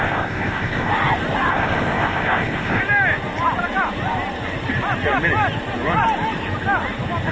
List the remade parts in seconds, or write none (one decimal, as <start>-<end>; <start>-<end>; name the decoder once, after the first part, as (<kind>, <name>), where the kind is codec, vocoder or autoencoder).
0.0-0.9 (codec, SNAC); 1.5-2.8